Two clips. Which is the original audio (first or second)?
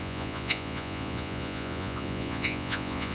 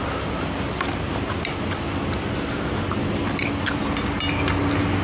second